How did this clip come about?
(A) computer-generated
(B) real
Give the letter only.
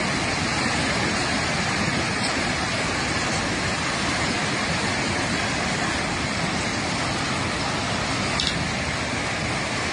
B